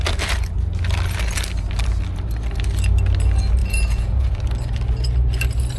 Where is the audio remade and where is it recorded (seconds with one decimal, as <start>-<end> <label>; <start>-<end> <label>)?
0.0-3.6 recorded; 3.6-4.3 remade; 4.3-5.8 recorded